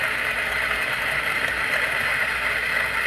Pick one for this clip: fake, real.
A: real